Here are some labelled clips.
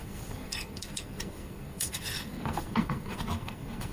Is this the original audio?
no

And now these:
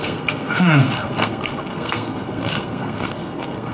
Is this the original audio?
no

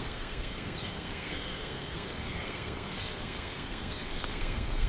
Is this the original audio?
no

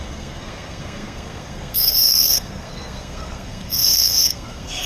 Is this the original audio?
no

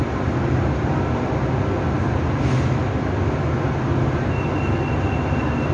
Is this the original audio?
yes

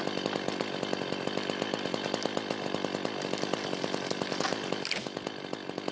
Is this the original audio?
yes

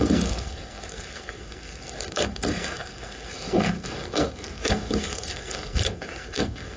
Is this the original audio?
no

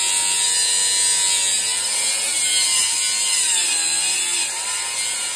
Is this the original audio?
yes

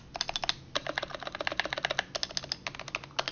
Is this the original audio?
yes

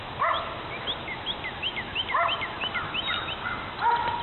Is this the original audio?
yes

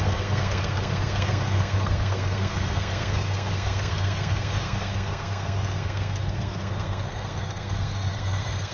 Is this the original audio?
no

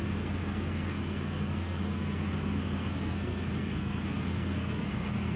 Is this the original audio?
no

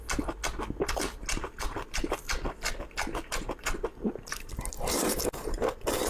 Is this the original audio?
yes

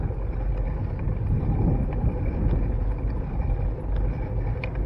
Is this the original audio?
yes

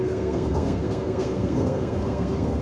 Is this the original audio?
no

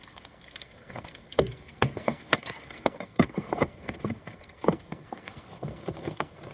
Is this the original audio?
no